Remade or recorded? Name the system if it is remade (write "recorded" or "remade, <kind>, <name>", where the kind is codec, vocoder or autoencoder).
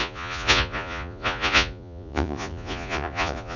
remade, vocoder, Vocos